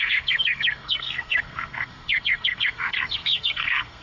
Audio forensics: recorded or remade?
remade